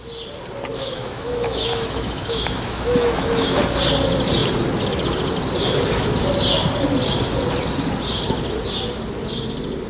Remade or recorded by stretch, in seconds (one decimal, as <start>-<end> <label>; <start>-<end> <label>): 0.0-0.7 recorded; 0.7-3.6 remade; 3.6-9.9 recorded